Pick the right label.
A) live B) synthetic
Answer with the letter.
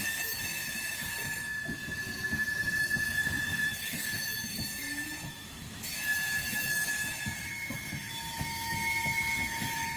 B